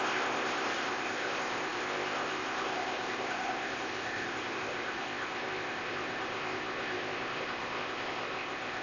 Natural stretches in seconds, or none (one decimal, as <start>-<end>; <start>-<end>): none